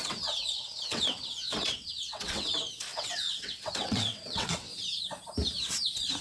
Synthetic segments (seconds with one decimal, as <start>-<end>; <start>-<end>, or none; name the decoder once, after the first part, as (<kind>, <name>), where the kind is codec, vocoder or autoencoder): 0.0-4.7 (vocoder, WaveNeXt)